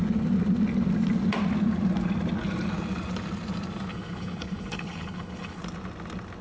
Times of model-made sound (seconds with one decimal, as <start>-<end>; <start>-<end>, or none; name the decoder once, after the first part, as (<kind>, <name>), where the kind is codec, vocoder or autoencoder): 3.9-5.6 (codec, HILCodec)